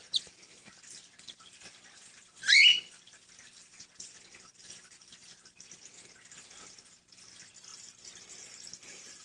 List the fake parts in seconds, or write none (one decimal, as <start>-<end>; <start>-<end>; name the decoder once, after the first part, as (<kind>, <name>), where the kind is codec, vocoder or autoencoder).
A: none